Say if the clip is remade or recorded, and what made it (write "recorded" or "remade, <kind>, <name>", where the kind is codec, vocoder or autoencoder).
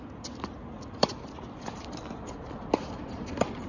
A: recorded